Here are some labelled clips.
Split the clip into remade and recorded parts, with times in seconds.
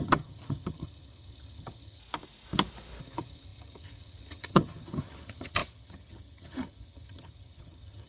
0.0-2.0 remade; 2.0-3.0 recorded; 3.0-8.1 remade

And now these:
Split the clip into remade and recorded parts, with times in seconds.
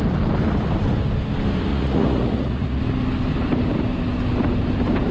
0.0-1.7 recorded; 1.7-2.8 remade; 2.8-5.1 recorded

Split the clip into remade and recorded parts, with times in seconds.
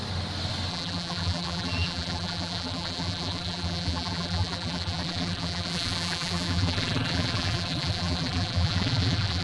0.0-0.7 recorded; 0.7-9.4 remade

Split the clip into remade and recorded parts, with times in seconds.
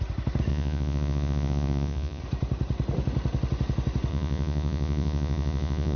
0.0-0.5 recorded; 0.5-2.2 remade; 2.2-4.1 recorded; 4.1-6.0 remade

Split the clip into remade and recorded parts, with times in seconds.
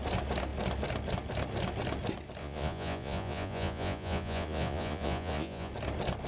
0.0-2.4 recorded; 2.4-5.7 remade; 5.7-6.3 recorded